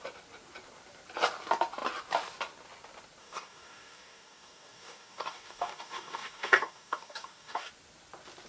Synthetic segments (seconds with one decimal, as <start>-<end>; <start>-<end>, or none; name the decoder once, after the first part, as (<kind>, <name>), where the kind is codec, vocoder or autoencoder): 3.2-7.7 (codec, DAC)